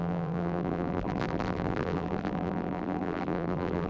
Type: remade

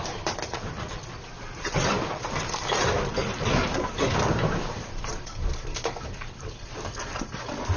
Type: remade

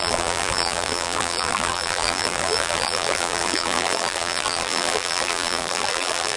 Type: remade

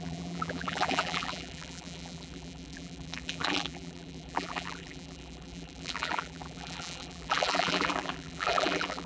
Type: remade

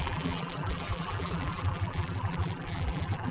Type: remade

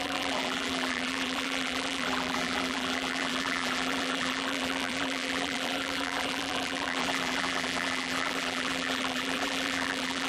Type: remade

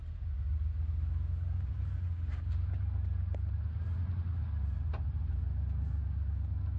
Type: recorded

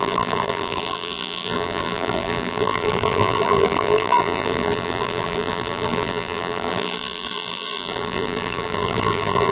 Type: remade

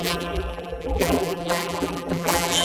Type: remade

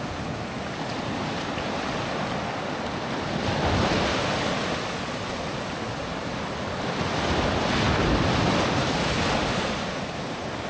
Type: recorded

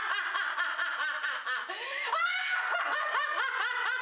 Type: recorded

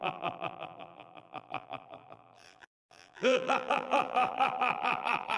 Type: remade